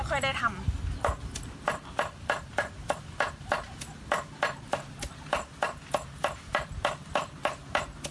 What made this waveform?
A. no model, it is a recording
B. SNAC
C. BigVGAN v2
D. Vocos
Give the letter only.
A